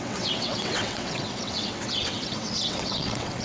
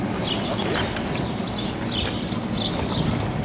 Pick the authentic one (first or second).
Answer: second